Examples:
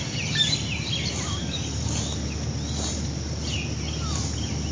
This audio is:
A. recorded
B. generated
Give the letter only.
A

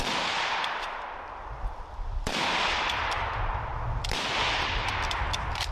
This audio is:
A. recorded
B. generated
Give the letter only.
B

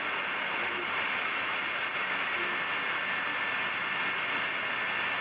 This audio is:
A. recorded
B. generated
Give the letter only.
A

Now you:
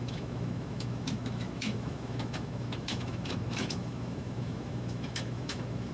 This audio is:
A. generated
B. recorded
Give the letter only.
A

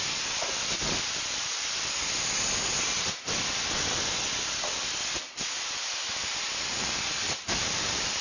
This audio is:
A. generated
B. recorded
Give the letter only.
A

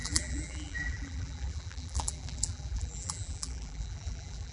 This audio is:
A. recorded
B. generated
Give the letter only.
B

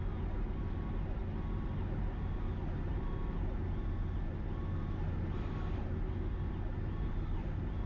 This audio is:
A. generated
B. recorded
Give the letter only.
B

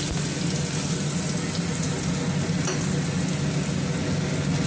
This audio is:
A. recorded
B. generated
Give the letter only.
A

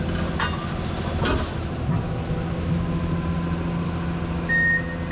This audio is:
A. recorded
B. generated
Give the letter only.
A